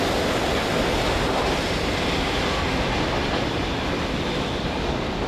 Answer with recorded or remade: recorded